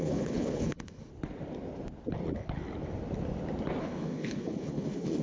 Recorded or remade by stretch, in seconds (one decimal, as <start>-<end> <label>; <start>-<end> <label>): 0.0-1.1 remade; 1.1-3.8 recorded; 3.8-5.2 remade